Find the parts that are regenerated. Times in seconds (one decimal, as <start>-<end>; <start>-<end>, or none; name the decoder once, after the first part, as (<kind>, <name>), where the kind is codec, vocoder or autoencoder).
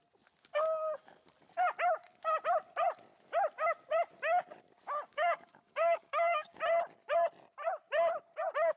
5.1-6.6 (codec, DAC)